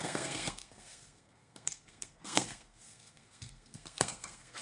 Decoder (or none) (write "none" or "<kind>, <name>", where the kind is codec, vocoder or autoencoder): codec, SNAC